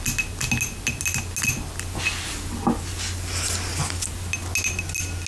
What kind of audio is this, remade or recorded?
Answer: recorded